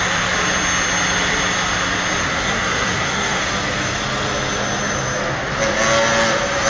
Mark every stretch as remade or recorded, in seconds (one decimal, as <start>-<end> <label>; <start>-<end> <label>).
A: 0.0-2.2 recorded; 2.2-3.4 remade; 3.4-6.7 recorded